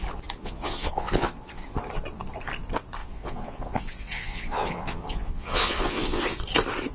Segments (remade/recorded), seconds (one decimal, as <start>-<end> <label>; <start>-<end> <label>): 0.0-0.4 recorded; 0.4-1.7 remade; 1.7-3.0 recorded; 3.0-6.4 remade; 6.4-6.9 recorded